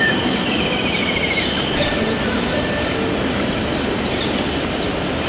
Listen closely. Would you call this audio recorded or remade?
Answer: remade